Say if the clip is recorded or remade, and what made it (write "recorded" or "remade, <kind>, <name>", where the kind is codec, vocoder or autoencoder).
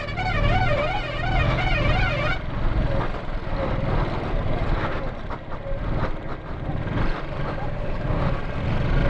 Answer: recorded